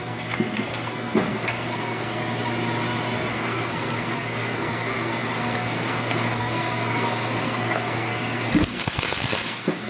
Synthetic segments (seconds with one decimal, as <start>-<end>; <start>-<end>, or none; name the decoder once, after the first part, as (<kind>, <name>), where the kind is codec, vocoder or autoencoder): 0.0-2.2 (codec, SNAC); 3.3-9.9